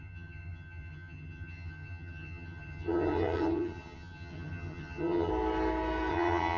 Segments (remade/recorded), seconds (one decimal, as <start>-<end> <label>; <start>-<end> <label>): 0.0-5.3 remade; 5.3-6.1 recorded; 6.1-6.6 remade